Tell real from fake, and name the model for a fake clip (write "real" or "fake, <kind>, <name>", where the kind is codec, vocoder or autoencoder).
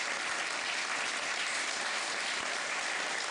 real